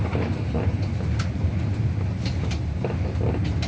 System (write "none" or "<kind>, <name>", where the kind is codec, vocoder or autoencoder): none